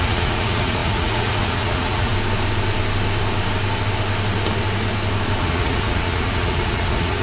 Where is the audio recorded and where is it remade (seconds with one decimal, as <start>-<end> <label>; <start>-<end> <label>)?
0.0-2.1 remade; 2.1-5.4 recorded; 5.4-7.2 remade